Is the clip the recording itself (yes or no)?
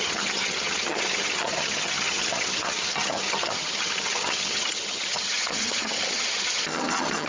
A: no